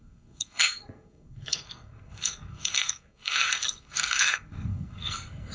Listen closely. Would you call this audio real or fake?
fake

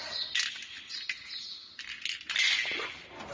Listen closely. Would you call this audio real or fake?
real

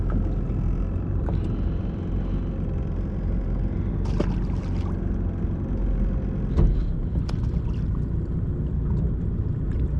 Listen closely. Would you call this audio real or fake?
real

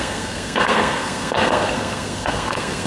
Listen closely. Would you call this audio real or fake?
fake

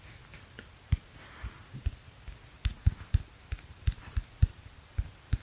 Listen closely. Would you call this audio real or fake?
real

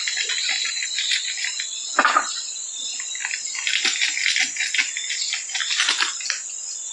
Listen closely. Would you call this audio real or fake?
real